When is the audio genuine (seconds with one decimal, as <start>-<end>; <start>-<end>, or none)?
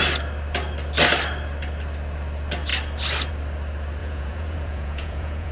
0.0-4.0